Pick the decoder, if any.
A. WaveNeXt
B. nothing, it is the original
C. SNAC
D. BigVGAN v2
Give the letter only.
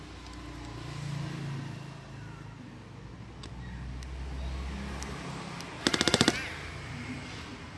B